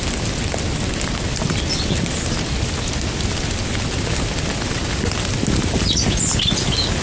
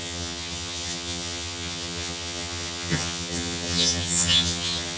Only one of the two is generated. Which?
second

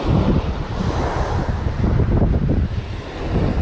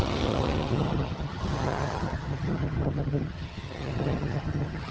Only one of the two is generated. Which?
second